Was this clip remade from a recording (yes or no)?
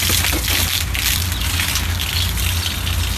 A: no